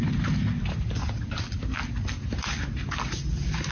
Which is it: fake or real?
real